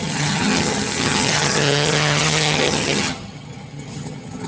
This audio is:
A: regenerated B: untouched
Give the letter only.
A